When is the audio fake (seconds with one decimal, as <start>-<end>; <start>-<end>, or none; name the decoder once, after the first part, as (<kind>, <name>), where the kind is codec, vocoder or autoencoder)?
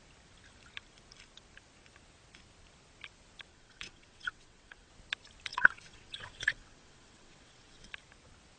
3.5-4.9 (vocoder, WaveNeXt); 5.5-7.9